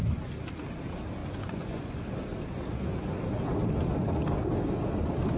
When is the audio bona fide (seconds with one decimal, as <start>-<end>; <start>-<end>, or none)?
0.0-1.2; 2.0-5.4